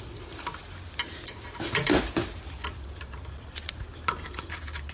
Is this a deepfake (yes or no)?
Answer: no